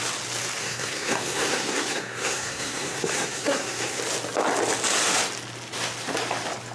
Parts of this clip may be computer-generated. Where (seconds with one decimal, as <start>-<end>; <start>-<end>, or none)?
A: 0.6-4.0